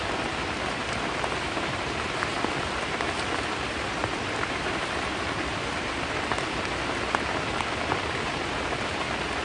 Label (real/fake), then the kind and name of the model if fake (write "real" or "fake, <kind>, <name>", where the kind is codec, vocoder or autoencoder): real